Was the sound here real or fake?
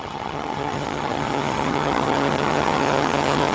fake